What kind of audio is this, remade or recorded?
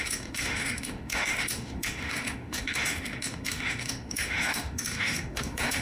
remade